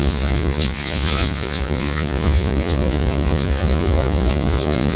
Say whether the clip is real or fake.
fake